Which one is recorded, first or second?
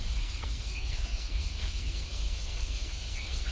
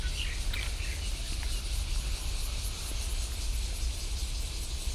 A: second